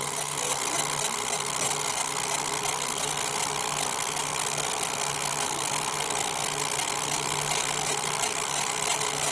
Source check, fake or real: real